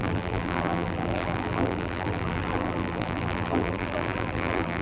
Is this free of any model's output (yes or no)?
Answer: no